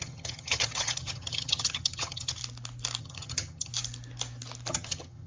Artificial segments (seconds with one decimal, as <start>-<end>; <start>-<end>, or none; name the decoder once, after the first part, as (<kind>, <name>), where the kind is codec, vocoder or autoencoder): 0.0-2.4 (vocoder, HiFi-GAN); 3.0-3.7; 4.7-5.3